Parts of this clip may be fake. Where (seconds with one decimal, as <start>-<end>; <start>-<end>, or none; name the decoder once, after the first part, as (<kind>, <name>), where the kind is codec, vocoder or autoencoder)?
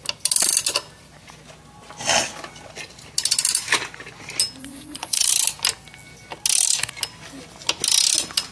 4.6-5.3 (vocoder, Vocos)